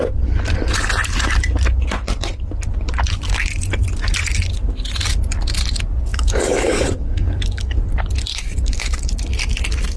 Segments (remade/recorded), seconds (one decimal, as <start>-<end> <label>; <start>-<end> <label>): 0.0-6.1 recorded; 6.1-7.8 remade; 7.8-8.3 recorded; 8.3-9.1 remade; 9.1-10.0 recorded